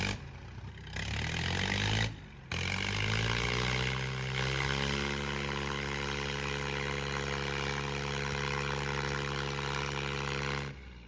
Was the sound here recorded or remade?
recorded